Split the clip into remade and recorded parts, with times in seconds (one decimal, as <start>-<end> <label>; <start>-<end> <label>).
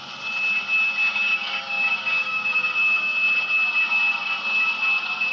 0.0-1.0 recorded; 1.0-2.7 remade; 2.7-5.3 recorded